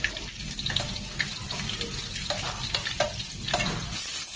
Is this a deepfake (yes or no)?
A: no